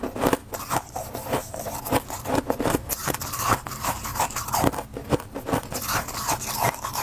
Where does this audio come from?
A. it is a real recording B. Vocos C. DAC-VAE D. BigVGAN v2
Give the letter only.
A